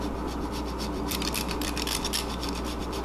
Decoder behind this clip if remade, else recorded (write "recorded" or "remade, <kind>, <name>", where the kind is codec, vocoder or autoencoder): remade, vocoder, BigVGAN v2